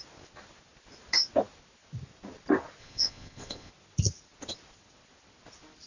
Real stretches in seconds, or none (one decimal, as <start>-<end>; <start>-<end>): 0.0-2.8; 3.7-5.9